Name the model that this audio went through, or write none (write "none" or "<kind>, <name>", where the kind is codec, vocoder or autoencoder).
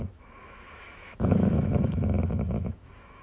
autoencoder, DAC-VAE